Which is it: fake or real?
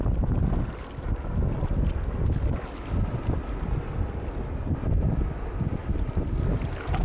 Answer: real